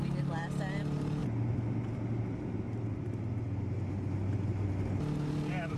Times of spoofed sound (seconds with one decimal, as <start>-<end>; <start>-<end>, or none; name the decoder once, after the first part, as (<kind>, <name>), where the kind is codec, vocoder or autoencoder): none